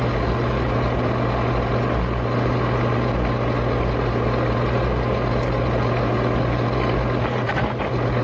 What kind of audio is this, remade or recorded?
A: recorded